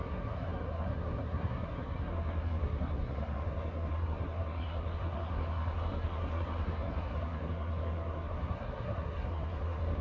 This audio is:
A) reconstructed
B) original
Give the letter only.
A